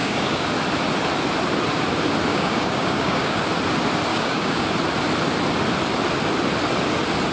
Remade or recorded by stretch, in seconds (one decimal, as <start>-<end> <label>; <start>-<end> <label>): 0.0-0.5 remade; 0.5-2.3 recorded; 2.3-3.4 remade; 3.4-4.1 recorded; 4.1-4.7 remade; 4.7-7.3 recorded